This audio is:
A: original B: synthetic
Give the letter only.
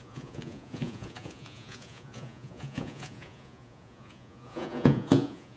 B